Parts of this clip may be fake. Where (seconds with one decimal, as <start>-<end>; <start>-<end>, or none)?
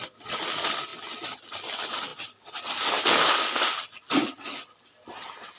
none